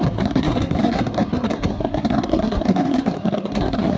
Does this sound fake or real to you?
fake